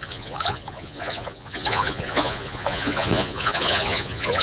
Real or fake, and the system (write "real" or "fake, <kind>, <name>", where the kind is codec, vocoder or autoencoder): fake, vocoder, Vocos